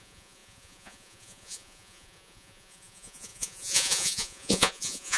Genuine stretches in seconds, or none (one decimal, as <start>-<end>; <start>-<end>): none